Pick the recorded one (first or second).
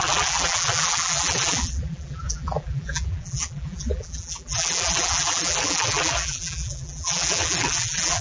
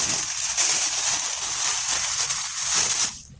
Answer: second